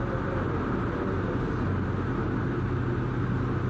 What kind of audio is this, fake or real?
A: real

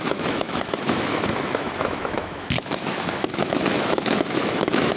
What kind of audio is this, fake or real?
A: fake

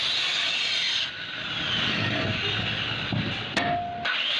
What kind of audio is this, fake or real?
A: real